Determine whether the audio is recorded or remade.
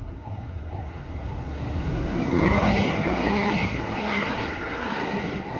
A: remade